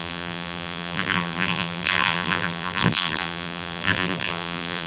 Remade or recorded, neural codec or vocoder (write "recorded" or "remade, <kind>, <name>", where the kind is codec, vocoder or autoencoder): remade, vocoder, BigVGAN v2